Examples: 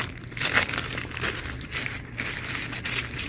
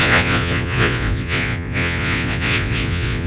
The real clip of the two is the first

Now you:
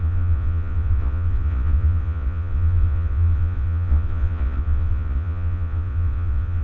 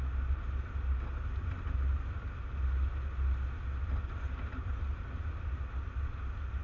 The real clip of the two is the second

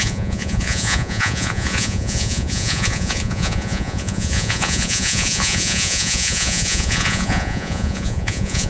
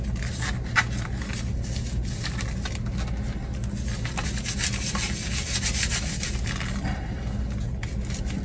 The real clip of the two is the second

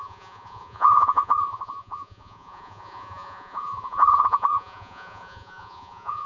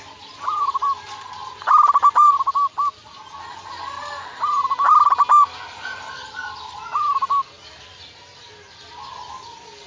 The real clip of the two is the second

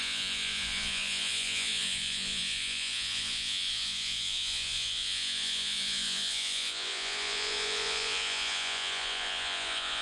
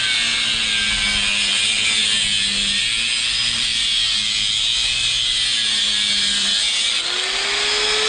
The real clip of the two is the second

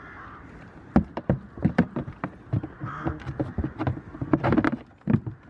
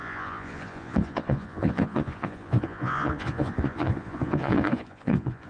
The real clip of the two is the first